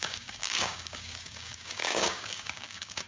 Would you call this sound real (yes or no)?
no